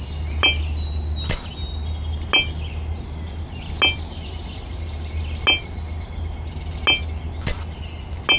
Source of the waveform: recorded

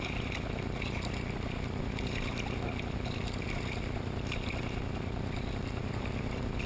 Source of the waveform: recorded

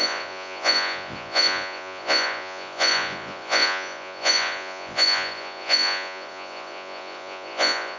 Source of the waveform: remade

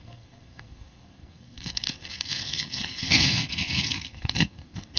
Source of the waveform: remade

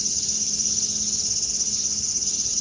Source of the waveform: recorded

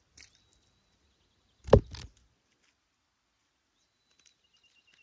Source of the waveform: recorded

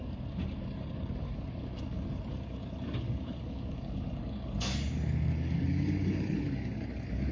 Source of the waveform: remade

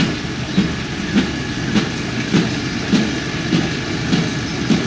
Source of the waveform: recorded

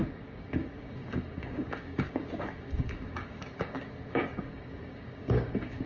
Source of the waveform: remade